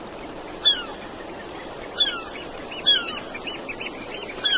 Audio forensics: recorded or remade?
recorded